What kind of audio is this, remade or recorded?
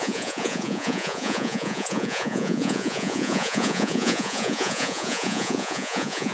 remade